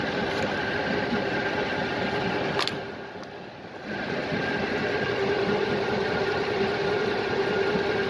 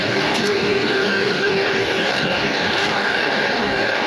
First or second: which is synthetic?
second